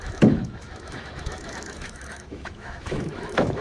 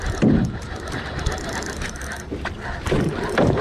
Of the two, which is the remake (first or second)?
first